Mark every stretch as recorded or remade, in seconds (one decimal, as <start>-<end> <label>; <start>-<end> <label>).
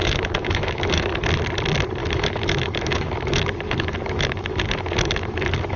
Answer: 0.0-1.2 remade; 1.2-2.0 recorded; 2.0-5.8 remade